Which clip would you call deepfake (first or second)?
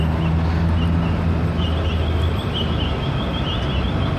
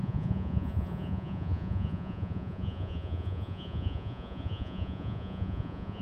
second